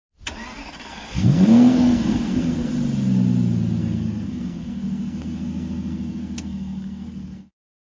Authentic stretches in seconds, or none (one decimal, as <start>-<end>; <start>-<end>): 0.0-0.6; 2.7-3.8